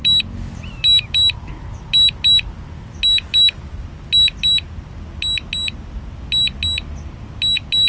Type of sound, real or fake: real